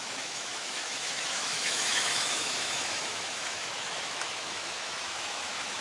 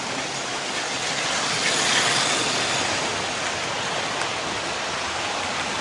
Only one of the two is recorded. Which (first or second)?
second